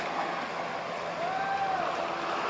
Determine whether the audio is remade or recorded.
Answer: recorded